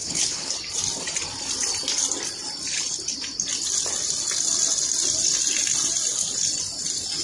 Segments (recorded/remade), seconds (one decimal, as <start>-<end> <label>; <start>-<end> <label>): 0.0-0.5 remade; 0.5-7.2 recorded

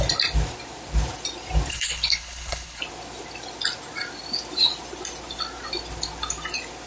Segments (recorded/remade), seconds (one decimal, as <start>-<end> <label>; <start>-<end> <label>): 0.0-1.7 recorded; 1.7-2.8 remade; 2.8-6.9 recorded